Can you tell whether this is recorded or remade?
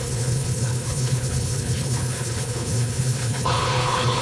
remade